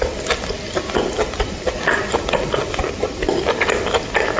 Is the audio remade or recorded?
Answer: recorded